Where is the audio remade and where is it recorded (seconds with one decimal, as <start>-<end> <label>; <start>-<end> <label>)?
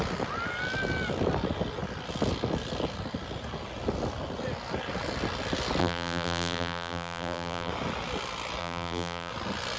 0.0-5.8 recorded; 5.8-7.7 remade; 7.7-8.6 recorded; 8.6-9.3 remade; 9.3-9.8 recorded